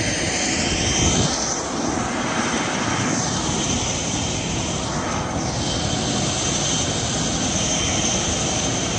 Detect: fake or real real